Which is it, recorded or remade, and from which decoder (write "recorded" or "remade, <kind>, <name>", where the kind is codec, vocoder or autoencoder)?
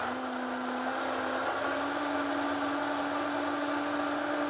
recorded